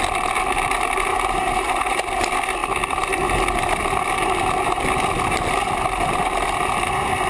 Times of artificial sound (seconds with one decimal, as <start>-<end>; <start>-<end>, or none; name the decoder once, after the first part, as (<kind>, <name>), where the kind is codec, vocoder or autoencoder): 1.1-1.6 (vocoder, BigVGAN v2)